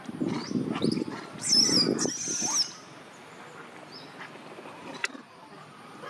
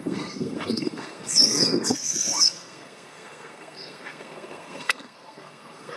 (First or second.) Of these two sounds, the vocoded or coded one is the second